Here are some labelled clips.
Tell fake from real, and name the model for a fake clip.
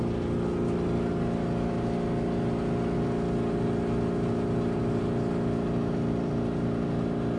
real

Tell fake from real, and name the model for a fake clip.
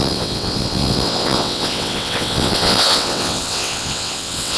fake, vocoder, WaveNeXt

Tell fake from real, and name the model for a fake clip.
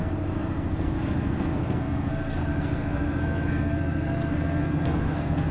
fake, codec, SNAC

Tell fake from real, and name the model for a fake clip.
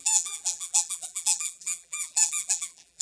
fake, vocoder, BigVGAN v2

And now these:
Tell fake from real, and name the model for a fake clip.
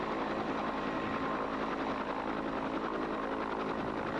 real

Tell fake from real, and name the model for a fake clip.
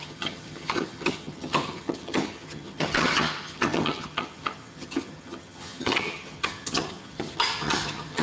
fake, vocoder, HiFi-GAN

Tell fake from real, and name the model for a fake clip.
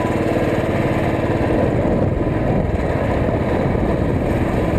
real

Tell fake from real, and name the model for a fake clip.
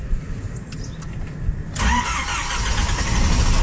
real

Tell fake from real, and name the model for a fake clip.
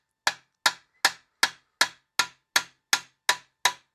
real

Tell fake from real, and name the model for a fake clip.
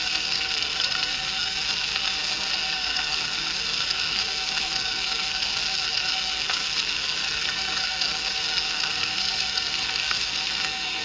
fake, codec, SNAC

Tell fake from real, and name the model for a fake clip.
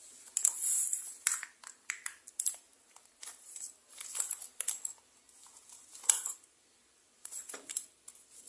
real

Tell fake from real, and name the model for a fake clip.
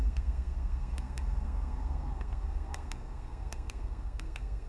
fake, codec, SNAC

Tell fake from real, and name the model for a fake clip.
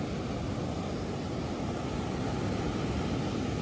real